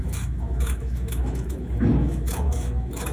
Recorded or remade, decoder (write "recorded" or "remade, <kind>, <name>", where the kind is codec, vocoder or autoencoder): remade, autoencoder, DAC-VAE